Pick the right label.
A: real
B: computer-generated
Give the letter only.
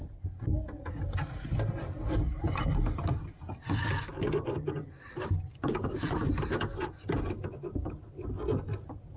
A